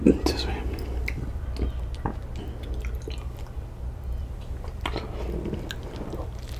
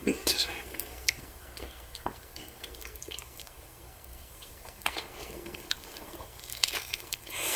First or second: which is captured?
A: first